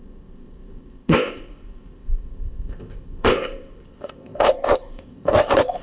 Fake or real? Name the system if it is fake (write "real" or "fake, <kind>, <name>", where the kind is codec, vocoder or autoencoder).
fake, codec, ZipCodec